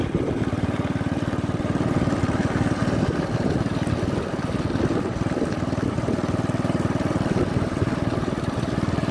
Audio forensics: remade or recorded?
recorded